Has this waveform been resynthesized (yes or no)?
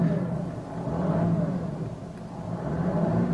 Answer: no